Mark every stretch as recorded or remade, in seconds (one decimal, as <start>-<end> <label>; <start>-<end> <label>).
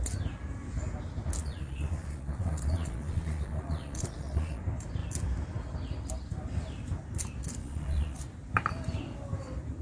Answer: 0.0-1.4 recorded; 1.4-4.6 remade; 4.6-7.6 recorded; 7.6-8.2 remade; 8.2-9.8 recorded